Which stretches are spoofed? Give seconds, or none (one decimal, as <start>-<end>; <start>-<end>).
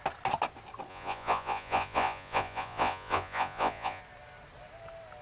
0.9-4.0